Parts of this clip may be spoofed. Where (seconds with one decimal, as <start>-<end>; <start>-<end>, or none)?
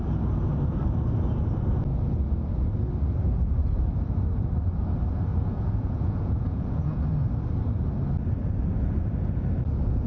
5.3-7.1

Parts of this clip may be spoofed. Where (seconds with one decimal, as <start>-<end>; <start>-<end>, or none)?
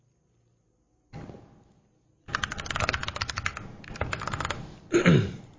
none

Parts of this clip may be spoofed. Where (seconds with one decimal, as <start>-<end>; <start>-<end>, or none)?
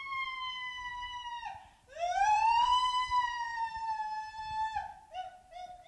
0.9-2.9; 3.5-4.4